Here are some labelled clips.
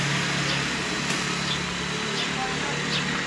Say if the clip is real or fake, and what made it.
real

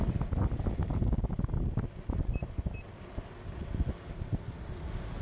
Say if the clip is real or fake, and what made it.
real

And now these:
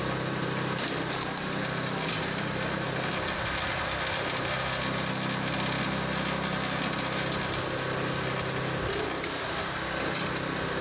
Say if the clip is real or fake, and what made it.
real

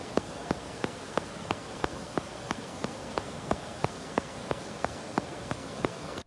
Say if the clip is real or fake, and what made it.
fake, codec, SNAC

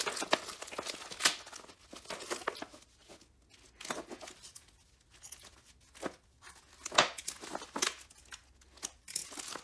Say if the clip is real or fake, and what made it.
real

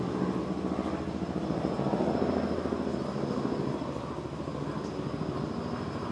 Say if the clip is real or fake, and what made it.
real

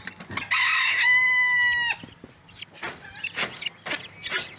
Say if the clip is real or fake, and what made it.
real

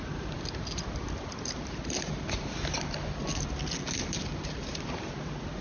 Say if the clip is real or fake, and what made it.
real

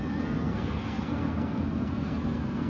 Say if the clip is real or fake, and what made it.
fake, codec, SNAC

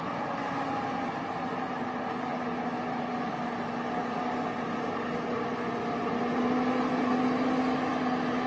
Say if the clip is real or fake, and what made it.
real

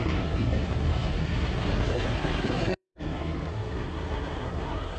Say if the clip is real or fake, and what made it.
fake, codec, SNAC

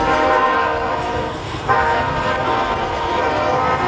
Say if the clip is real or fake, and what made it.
fake, codec, SNAC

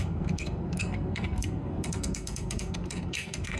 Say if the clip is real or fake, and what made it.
fake, codec, SNAC